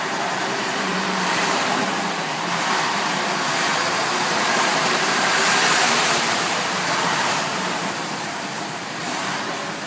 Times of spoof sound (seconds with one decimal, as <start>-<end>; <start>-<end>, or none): 0.0-9.2